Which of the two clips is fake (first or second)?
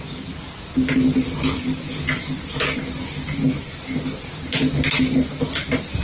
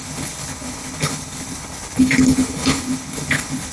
second